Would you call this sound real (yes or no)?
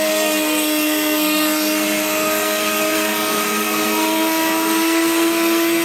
no